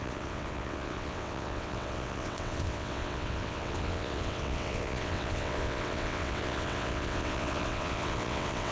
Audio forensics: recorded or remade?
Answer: remade